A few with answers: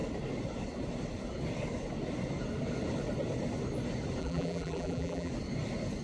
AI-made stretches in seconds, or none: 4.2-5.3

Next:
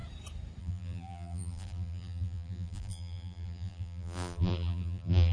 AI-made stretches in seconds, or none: 0.6-5.3

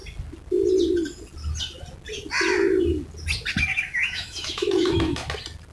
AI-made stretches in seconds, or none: 3.7-5.3

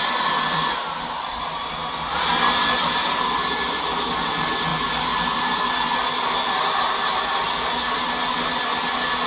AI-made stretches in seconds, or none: none

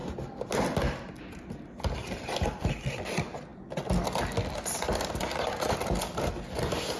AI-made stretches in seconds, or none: none